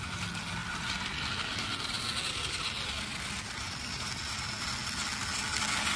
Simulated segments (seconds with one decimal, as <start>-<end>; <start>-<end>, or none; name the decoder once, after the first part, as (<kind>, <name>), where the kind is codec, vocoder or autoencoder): none